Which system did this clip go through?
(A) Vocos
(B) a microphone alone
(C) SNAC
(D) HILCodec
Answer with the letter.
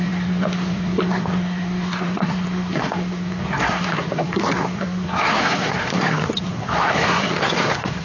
C